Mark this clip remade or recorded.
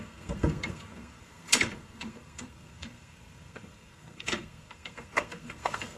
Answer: remade